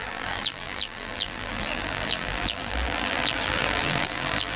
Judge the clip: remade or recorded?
remade